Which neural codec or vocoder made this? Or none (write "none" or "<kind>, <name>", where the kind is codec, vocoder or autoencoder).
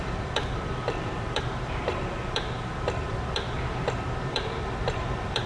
vocoder, BigVGAN v2